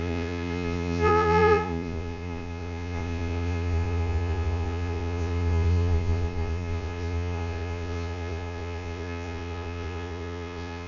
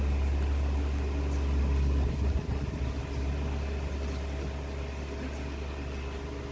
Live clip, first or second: second